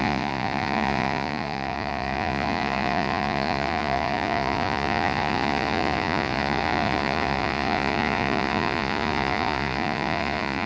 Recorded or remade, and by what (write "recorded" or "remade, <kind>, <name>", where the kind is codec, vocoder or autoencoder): remade, vocoder, Vocos